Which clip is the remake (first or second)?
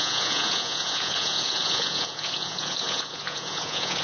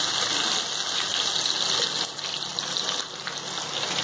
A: first